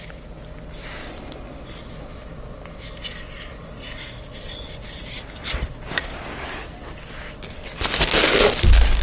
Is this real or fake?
real